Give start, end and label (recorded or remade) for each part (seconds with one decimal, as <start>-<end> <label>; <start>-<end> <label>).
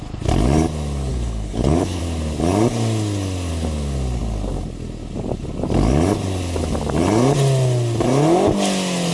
0.0-1.1 recorded; 1.1-2.0 remade; 2.0-9.1 recorded